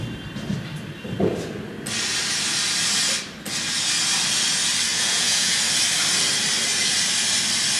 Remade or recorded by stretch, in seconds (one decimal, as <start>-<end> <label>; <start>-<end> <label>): 0.0-4.9 recorded; 4.9-5.6 remade; 5.6-7.8 recorded